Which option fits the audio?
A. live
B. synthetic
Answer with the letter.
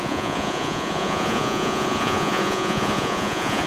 B